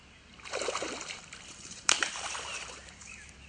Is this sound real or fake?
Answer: fake